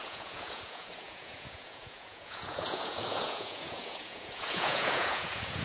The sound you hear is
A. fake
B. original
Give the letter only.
A